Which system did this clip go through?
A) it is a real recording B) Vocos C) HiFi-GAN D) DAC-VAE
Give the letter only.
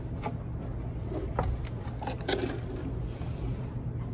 A